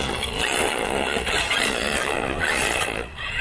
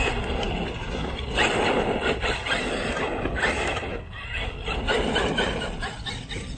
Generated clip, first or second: first